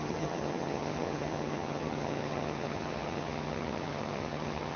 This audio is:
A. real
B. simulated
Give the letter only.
B